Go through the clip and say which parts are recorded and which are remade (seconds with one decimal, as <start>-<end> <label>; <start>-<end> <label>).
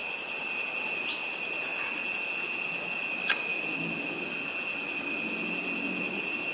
0.0-1.7 remade; 1.7-3.1 recorded; 3.1-3.5 remade; 3.5-6.0 recorded; 6.0-6.5 remade